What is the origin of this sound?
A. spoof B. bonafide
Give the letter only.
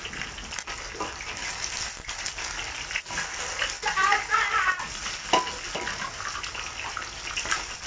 B